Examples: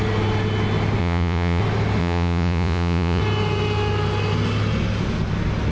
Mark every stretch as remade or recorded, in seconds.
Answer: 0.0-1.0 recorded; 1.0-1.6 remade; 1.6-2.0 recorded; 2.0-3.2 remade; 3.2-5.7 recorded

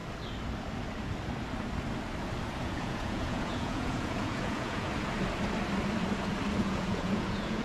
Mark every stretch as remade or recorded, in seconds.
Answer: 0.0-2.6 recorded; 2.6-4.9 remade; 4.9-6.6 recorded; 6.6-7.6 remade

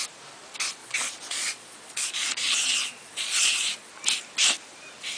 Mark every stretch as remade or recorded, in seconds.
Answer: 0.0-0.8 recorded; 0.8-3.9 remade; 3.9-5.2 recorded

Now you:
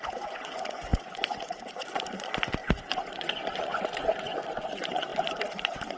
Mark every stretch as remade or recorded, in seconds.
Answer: 0.0-6.0 remade

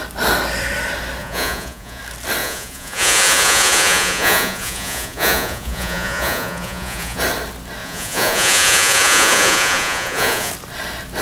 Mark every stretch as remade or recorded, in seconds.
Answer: 0.0-1.2 recorded; 1.2-2.0 remade; 2.0-2.4 recorded; 2.4-7.2 remade; 7.2-7.8 recorded; 7.8-10.5 remade; 10.5-11.2 recorded